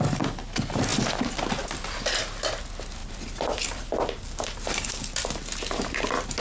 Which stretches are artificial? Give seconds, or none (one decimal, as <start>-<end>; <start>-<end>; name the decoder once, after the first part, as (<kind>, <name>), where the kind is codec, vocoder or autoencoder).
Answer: 0.9-2.2 (vocoder, BigVGAN v2); 3.0-4.4